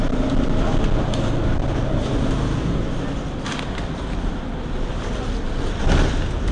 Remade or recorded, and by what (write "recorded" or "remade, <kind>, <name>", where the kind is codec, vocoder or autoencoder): recorded